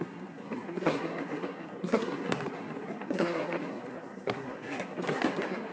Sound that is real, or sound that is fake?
fake